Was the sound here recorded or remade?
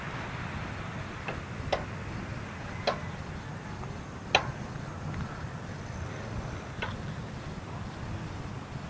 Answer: recorded